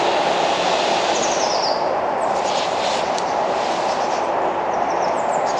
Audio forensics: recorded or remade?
recorded